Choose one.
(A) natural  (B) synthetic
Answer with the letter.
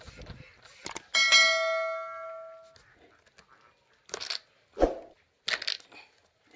A